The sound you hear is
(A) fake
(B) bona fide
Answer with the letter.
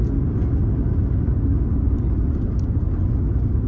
B